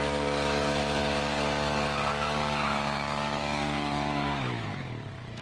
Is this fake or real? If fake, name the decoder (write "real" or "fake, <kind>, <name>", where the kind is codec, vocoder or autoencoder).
fake, codec, DAC